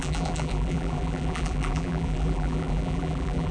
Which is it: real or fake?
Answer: fake